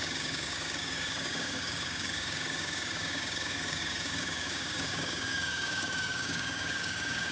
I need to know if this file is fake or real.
fake